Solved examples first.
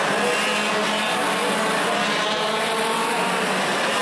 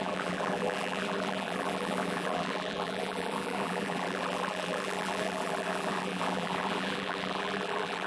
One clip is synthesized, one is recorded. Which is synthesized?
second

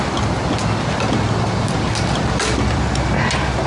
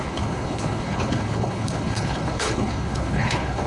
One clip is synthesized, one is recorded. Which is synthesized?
second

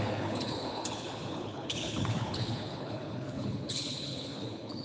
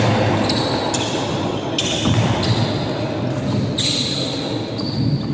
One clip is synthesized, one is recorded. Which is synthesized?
first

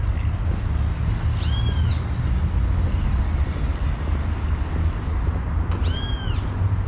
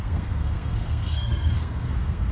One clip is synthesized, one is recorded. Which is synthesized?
second